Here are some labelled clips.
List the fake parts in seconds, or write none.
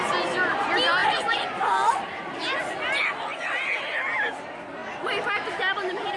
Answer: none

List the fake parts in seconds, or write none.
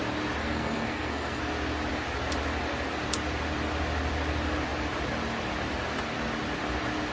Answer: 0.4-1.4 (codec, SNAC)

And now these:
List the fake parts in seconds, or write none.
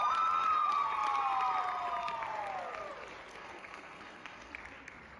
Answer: 3.3-4.5 (codec, SNAC)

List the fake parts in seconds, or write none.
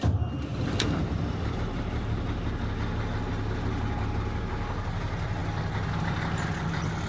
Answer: 0.5-2.0 (vocoder, BigVGAN v2)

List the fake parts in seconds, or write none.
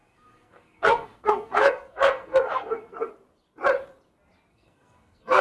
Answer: 0.0-3.1 (codec, SNAC); 4.5-5.4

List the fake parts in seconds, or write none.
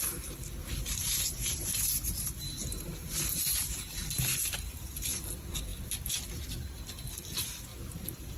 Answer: 0.6-4.2 (vocoder, BigVGAN v2); 7.7-8.4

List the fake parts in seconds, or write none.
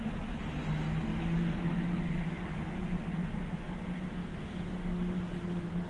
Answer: none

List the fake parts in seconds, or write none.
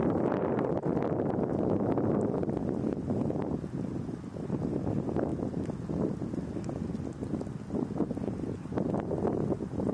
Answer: none